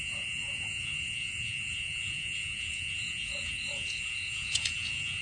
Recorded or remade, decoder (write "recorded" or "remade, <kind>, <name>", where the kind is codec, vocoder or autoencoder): remade, vocoder, Vocos